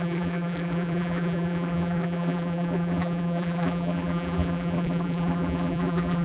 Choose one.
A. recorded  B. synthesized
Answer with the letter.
B